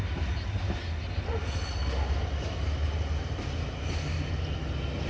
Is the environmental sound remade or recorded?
recorded